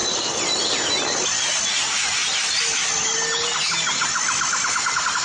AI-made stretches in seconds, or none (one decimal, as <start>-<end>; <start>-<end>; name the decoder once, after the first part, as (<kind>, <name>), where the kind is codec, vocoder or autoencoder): 0.0-0.9 (vocoder, BigVGAN v2); 2.2-3.6